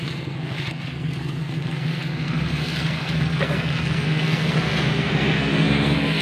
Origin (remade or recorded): remade